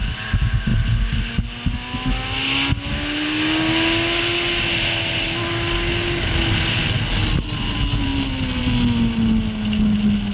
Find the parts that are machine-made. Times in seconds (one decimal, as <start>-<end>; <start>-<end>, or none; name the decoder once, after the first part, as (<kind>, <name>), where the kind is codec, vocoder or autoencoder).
none